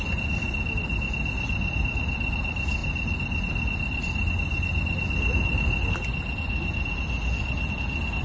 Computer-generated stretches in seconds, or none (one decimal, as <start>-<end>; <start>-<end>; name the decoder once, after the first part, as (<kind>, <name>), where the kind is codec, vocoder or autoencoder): none